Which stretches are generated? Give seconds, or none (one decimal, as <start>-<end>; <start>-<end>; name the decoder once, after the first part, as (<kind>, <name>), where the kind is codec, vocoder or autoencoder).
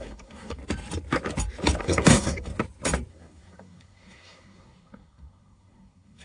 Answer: 0.0-0.6 (codec, SNAC); 1.8-2.5; 3.1-6.2